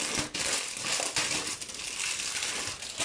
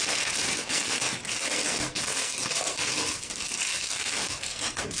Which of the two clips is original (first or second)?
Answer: first